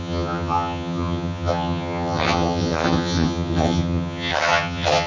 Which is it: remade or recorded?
remade